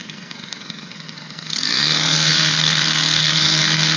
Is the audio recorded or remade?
remade